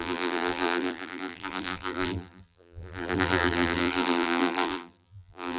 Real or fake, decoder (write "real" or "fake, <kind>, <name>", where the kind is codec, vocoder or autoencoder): fake, vocoder, BigVGAN v2